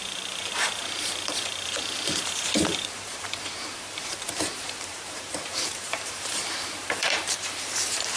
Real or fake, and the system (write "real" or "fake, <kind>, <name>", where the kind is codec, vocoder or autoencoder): fake, vocoder, BigVGAN v2